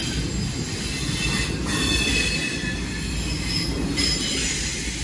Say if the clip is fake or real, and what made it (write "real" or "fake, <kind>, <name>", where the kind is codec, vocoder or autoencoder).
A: real